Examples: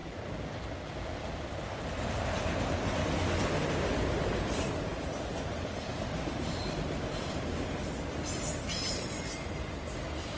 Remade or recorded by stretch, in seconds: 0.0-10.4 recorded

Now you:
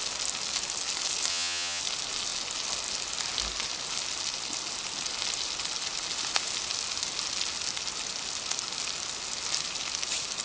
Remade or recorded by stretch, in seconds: 0.0-1.3 recorded; 1.3-1.8 remade; 1.8-10.4 recorded

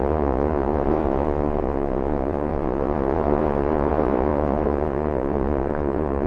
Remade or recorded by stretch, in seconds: 0.0-6.3 remade